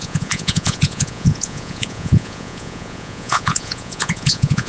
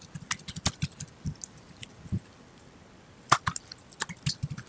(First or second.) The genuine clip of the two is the second